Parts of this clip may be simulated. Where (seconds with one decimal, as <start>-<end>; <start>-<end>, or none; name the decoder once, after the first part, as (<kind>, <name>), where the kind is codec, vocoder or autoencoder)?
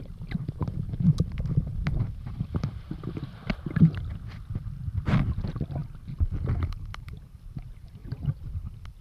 8.0-8.5 (vocoder, BigVGAN v2)